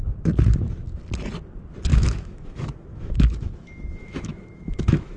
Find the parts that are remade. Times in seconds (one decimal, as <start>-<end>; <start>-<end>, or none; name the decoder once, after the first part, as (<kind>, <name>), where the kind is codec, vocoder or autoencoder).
1.9-5.2 (autoencoder, DAC-VAE)